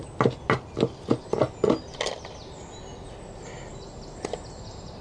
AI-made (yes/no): no